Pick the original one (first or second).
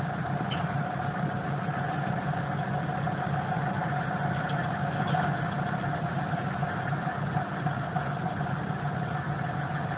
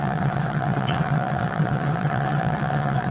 first